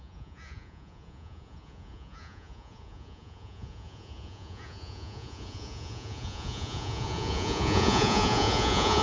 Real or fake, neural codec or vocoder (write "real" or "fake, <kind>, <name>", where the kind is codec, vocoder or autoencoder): fake, vocoder, Vocos